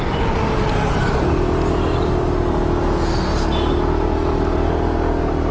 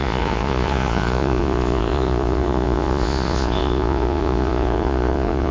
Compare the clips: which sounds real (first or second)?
first